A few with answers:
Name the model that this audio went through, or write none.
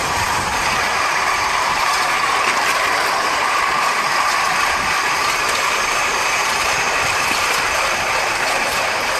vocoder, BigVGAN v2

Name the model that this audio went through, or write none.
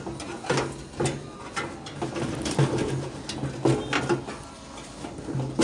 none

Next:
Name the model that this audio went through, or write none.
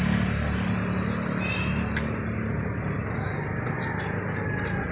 none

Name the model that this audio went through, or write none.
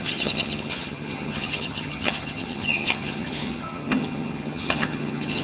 vocoder, HiFi-GAN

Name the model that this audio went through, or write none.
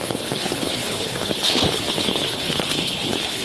codec, HILCodec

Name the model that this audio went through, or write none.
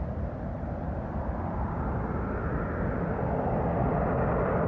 none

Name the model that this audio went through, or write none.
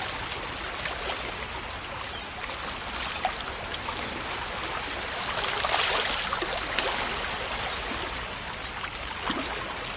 none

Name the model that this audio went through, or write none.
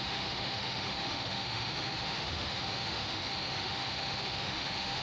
autoencoder, DAC-VAE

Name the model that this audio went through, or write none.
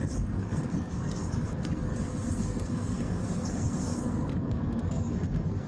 codec, SNAC